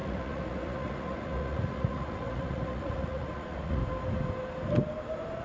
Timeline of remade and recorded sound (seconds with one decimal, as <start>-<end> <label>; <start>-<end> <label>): 0.0-3.8 remade; 3.8-5.4 recorded